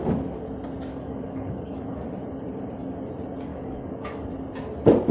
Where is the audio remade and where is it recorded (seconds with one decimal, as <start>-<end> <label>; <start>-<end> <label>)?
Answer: 0.0-0.9 recorded; 0.9-2.1 remade; 2.1-3.5 recorded; 3.5-4.3 remade; 4.3-5.1 recorded